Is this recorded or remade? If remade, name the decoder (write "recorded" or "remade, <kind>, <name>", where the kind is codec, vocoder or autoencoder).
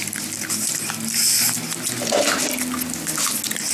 recorded